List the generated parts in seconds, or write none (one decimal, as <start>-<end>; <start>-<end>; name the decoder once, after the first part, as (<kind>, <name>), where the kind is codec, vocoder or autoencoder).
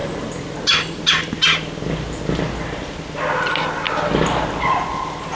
none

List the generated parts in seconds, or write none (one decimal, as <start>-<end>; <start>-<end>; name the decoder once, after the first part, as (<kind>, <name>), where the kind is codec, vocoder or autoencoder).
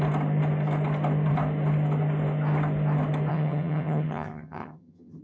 3.3-5.2 (vocoder, HiFi-GAN)